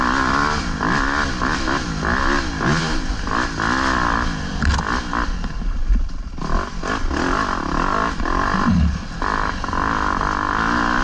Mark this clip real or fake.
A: real